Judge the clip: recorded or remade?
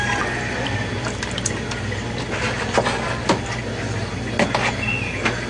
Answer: recorded